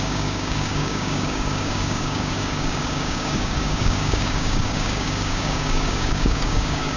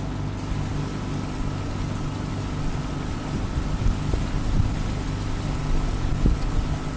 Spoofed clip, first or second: first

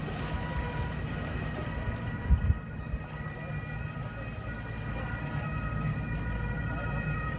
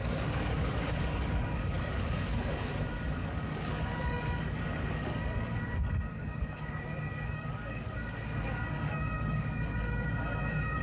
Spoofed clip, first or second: second